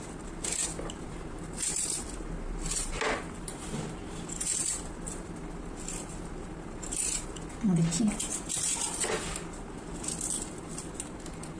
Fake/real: real